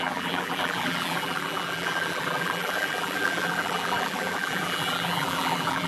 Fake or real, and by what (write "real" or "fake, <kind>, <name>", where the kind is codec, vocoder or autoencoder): fake, vocoder, BigVGAN v2